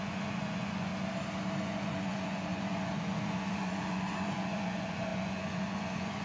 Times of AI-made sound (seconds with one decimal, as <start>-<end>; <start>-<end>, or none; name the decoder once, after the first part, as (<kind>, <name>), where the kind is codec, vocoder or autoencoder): 0.0-0.9 (vocoder, Vocos); 1.6-6.2